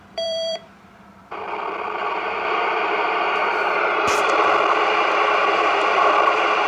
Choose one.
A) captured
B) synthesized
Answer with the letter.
B